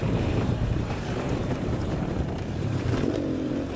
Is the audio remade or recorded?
remade